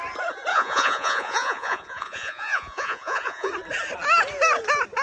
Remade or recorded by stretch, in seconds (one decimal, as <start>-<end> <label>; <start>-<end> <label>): 0.0-0.5 recorded; 0.5-3.5 remade; 3.5-5.0 recorded